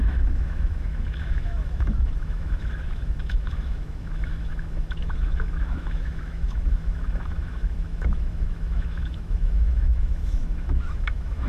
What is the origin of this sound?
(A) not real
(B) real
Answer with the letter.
A